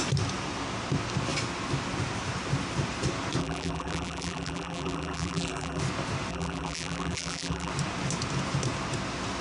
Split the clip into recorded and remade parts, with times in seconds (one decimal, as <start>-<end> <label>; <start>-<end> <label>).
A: 0.0-3.4 recorded; 3.4-5.8 remade; 5.8-6.3 recorded; 6.3-7.7 remade; 7.7-9.4 recorded